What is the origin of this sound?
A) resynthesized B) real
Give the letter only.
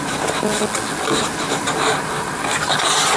B